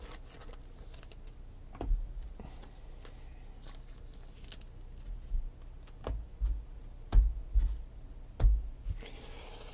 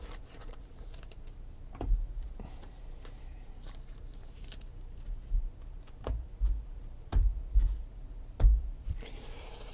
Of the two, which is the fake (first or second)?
second